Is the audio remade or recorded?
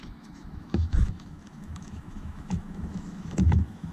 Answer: remade